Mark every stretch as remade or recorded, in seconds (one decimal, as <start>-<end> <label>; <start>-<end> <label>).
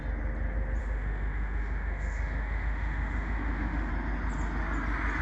0.0-0.8 recorded; 0.8-3.9 remade; 3.9-5.2 recorded